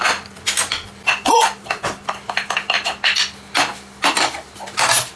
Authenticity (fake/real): real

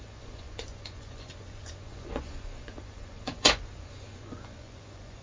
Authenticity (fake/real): fake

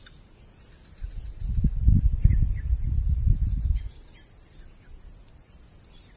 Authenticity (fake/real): real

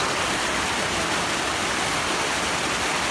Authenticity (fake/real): real